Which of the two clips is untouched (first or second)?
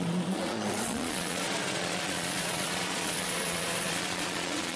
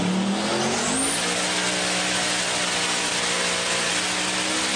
second